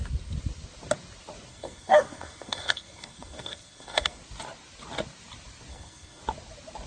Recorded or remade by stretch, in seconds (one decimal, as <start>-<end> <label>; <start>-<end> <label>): 0.0-1.5 recorded; 1.5-4.2 remade; 4.2-5.7 recorded; 5.7-6.2 remade; 6.2-6.9 recorded